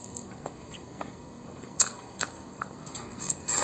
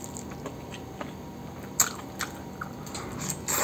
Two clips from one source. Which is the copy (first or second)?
first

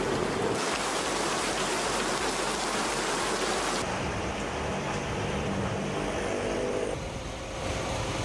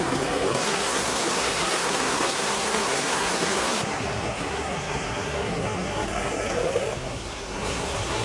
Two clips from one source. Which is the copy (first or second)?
second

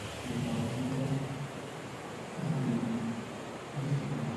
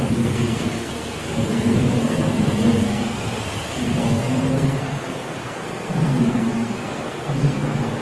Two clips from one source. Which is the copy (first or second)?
second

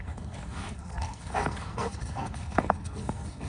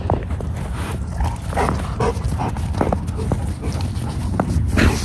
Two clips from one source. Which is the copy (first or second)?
first